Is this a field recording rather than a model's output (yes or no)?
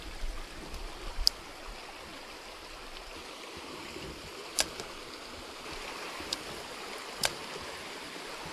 yes